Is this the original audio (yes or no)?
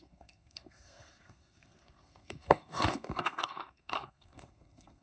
no